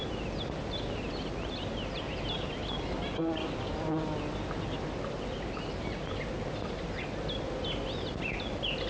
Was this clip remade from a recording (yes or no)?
no